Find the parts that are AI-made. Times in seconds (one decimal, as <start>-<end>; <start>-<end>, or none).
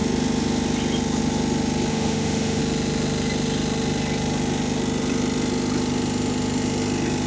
1.9-2.6